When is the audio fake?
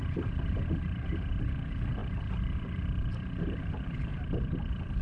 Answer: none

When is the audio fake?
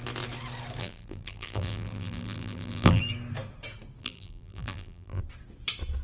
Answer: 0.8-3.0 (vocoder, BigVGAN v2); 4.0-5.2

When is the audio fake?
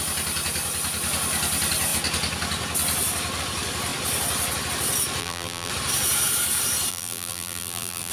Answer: 5.2-5.7 (vocoder, BigVGAN v2); 6.9-8.1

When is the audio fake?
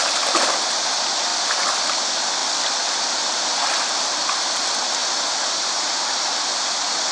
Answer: 0.0-0.7 (vocoder, BigVGAN v2); 1.3-2.0; 2.4-4.4; 5.0-5.7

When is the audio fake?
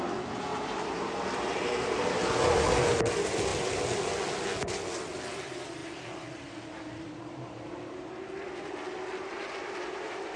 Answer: 0.5-1.4 (vocoder, BigVGAN v2)